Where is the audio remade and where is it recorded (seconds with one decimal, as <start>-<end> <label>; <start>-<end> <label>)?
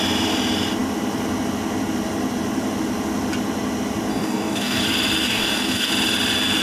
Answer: 0.0-4.1 recorded; 4.1-4.8 remade; 4.8-5.2 recorded; 5.2-5.9 remade; 5.9-6.6 recorded